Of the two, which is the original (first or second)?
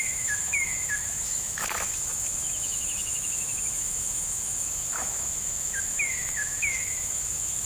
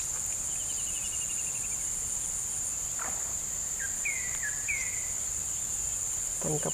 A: second